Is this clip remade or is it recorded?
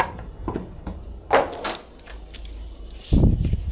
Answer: recorded